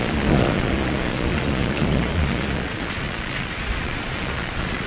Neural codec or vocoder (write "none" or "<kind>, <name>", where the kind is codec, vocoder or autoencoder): vocoder, Vocos